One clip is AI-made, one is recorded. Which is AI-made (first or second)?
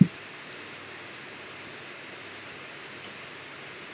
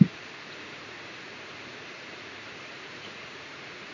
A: second